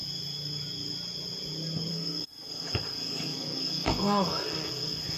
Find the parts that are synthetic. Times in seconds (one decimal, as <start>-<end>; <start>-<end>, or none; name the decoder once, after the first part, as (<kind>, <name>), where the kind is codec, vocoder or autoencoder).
1.9-5.2 (codec, SNAC)